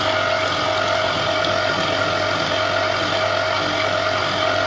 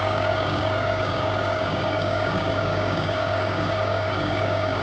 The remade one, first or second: second